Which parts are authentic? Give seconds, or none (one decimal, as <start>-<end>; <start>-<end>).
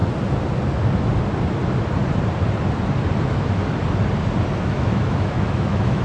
0.0-3.2; 3.6-4.6